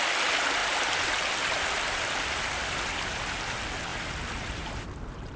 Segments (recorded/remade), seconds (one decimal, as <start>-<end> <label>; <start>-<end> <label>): 0.0-0.6 recorded; 0.6-2.9 remade; 2.9-3.9 recorded; 3.9-4.7 remade; 4.7-5.4 recorded